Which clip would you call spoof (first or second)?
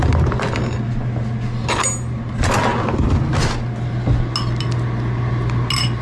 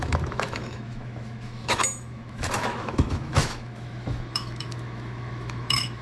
second